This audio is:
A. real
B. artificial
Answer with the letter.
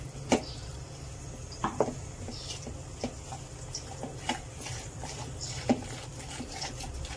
B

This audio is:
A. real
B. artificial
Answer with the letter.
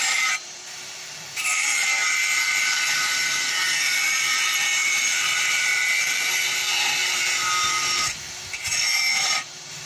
B